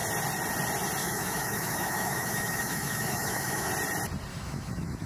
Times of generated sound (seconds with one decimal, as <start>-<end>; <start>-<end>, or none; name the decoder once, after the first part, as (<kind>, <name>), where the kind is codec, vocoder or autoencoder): 1.0-3.7 (autoencoder, DAC-VAE); 4.3-5.1